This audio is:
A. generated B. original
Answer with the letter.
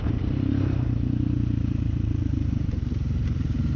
A